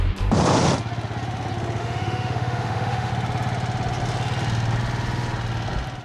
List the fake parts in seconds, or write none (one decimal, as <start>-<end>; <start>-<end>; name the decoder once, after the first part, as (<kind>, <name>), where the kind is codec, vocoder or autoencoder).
1.8-3.1 (autoencoder, DAC-VAE)